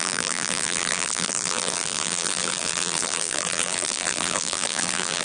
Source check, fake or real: fake